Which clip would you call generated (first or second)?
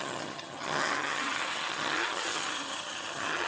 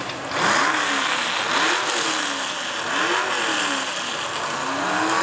first